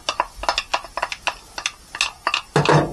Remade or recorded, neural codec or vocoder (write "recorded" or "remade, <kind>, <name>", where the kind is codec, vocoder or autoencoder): recorded